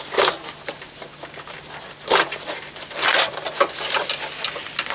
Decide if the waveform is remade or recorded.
recorded